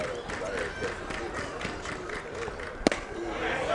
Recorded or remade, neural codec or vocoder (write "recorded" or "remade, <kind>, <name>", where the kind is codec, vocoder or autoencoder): recorded